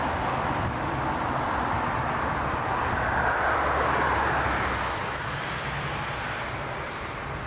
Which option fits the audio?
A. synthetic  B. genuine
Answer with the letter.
B